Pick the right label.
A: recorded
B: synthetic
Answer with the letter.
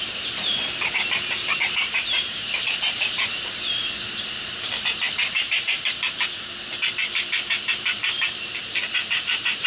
B